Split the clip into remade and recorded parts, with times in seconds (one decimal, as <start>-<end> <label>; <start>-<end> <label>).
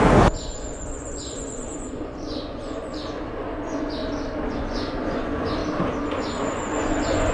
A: 0.0-4.0 remade; 4.0-4.5 recorded; 4.5-5.6 remade; 5.6-6.2 recorded; 6.2-7.3 remade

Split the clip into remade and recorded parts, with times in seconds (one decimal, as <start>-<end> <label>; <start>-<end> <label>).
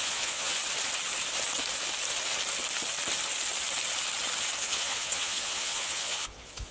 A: 0.0-0.6 remade; 0.6-4.6 recorded; 4.6-6.7 remade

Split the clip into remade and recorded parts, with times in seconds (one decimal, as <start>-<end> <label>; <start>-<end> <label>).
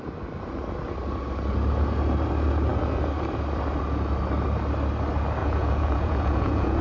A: 0.0-5.4 recorded; 5.4-6.8 remade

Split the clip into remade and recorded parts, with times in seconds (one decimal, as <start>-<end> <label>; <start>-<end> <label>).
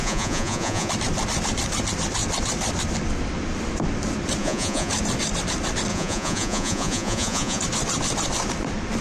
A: 0.0-0.9 remade; 0.9-4.4 recorded; 4.4-4.9 remade; 4.9-5.9 recorded; 5.9-7.6 remade; 7.6-9.0 recorded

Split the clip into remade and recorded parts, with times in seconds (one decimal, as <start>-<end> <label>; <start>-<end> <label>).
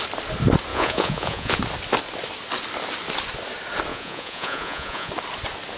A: 0.0-0.7 recorded; 0.7-1.6 remade; 1.6-3.9 recorded; 3.9-5.1 remade; 5.1-5.8 recorded